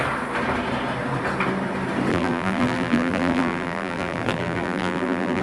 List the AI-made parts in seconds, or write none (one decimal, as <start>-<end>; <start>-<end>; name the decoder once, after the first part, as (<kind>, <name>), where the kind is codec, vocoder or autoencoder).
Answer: 2.1-5.4 (vocoder, BigVGAN v2)